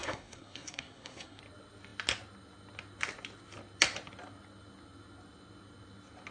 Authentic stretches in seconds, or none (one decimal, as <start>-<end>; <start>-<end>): 1.4-6.3